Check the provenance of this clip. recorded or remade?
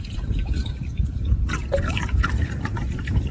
remade